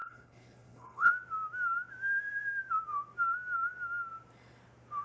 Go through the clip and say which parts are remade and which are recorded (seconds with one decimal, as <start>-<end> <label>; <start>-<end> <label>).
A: 0.0-1.1 remade; 1.1-5.0 recorded